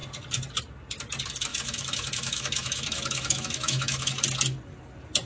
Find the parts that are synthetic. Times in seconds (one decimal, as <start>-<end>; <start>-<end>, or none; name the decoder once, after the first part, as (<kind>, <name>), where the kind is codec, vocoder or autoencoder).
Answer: 1.5-4.1 (autoencoder, DAC-VAE)